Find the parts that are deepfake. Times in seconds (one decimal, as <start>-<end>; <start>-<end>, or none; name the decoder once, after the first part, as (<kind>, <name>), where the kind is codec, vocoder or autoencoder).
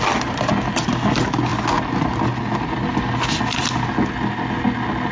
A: none